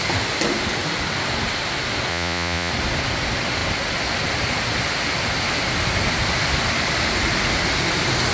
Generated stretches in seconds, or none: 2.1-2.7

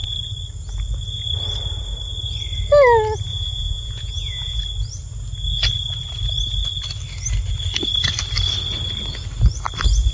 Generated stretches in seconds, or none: 3.3-4.6